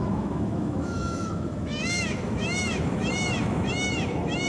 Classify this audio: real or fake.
fake